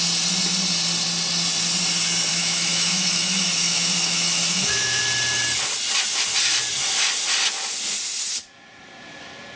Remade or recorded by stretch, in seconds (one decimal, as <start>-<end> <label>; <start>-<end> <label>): 0.0-2.3 recorded; 2.3-5.0 remade; 5.0-9.6 recorded

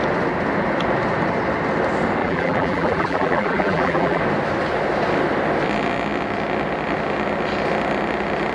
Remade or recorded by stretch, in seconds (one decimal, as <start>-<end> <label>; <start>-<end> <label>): 0.0-2.2 recorded; 2.2-4.2 remade; 4.2-8.5 recorded

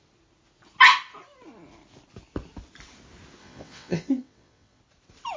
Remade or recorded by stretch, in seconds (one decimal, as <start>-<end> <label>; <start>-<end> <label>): 0.0-3.4 recorded; 3.4-4.8 remade; 4.8-5.4 recorded

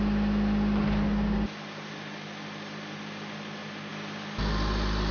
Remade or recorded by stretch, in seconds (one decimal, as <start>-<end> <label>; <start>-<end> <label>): 0.0-3.9 recorded; 3.9-4.4 remade; 4.4-5.1 recorded

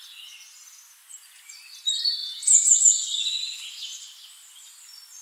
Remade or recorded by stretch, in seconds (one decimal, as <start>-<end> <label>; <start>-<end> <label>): 0.0-5.2 recorded

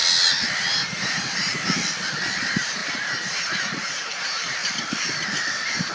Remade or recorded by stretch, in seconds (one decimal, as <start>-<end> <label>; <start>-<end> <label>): 0.0-0.7 recorded; 0.7-1.5 remade; 1.5-2.4 recorded; 2.4-4.6 remade; 4.6-5.5 recorded; 5.5-5.9 remade